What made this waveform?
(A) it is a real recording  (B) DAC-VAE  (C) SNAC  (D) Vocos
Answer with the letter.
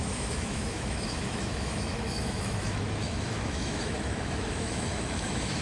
B